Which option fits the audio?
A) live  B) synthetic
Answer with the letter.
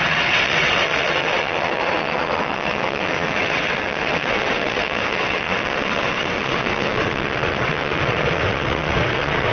B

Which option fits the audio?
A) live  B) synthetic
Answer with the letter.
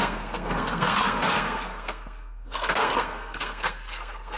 B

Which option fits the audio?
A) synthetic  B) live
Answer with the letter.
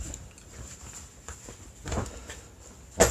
B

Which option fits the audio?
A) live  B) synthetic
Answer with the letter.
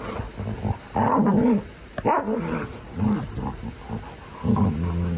A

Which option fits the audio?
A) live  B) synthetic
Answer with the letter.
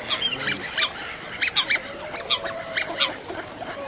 A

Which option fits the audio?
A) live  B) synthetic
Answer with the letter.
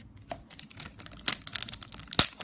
A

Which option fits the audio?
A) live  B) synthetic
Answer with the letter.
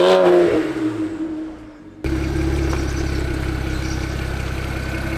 A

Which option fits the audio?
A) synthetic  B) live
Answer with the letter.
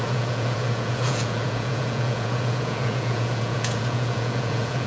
A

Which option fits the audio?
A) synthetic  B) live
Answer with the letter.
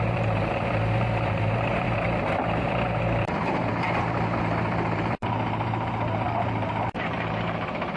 A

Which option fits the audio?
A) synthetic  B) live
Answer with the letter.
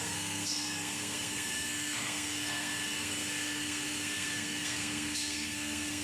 A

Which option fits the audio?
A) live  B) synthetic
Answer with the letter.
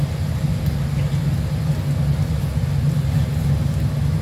A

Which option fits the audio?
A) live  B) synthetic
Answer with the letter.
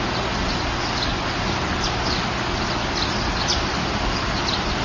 A